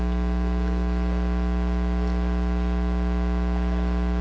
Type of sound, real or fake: real